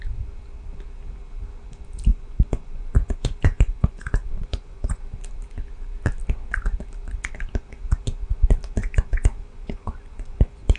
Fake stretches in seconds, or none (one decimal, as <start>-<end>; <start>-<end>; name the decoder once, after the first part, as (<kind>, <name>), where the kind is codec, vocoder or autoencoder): 2.1-5.0 (vocoder, Vocos); 8.8-10.8